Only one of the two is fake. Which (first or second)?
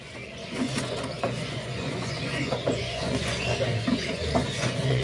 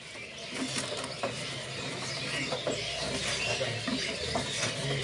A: first